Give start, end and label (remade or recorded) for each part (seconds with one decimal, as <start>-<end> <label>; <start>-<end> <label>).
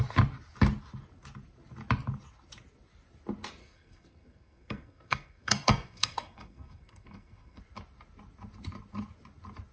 0.0-3.6 recorded; 3.6-7.6 remade; 7.6-9.7 recorded